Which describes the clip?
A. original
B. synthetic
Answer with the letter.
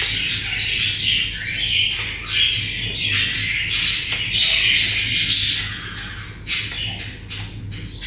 A